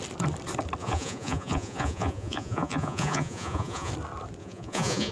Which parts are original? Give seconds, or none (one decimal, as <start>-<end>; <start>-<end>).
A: 0.0-0.8; 3.9-4.4